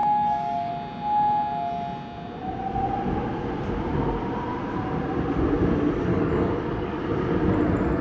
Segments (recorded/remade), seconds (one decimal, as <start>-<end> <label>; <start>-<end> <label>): 0.0-0.7 remade; 0.7-6.1 recorded; 6.1-7.0 remade; 7.0-8.0 recorded